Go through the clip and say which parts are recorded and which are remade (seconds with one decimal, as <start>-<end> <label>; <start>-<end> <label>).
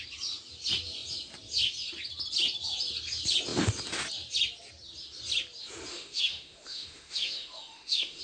0.0-5.9 recorded; 5.9-8.2 remade